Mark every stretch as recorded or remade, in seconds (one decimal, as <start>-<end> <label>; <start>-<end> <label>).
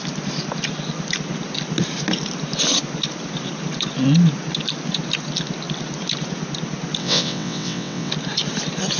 0.0-7.0 recorded; 7.0-8.1 remade; 8.1-9.0 recorded